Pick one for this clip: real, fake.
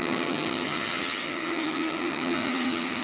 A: fake